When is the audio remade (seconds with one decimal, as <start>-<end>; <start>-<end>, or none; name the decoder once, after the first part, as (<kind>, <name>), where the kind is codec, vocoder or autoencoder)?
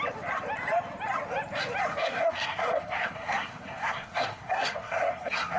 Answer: 1.9-5.6 (codec, SNAC)